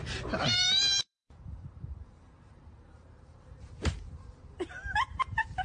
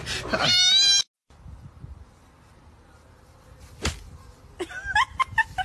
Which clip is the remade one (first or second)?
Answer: first